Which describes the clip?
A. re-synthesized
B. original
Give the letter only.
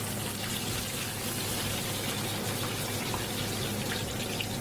B